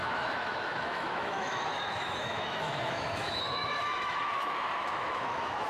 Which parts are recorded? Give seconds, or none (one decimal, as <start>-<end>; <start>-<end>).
none